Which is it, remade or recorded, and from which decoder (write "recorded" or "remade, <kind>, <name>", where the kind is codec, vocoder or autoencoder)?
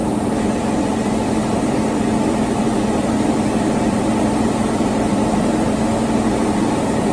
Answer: remade, vocoder, BigVGAN v2